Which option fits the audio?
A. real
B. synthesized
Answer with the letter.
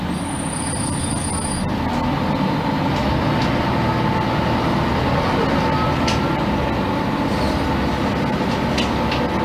A